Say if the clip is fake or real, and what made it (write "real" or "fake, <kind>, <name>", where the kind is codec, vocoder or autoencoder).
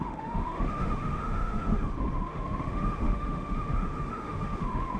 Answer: fake, autoencoder, DAC-VAE